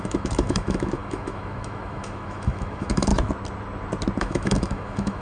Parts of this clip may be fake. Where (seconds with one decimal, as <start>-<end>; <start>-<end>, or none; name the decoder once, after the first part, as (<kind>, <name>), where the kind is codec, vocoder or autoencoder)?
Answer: 0.0-3.1 (autoencoder, DAC-VAE); 4.2-5.2